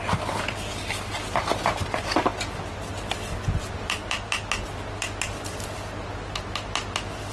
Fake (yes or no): no